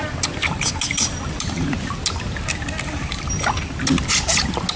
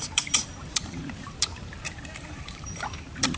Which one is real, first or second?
first